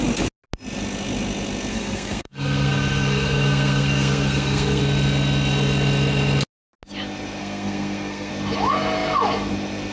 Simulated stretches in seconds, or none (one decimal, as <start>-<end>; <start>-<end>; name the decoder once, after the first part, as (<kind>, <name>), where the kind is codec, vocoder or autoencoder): 1.7-4.8 (codec, SNAC); 7.4-8.3